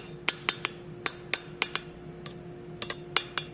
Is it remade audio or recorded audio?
recorded